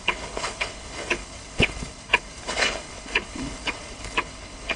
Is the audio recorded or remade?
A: remade